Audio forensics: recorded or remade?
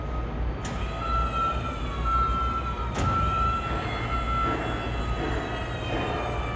recorded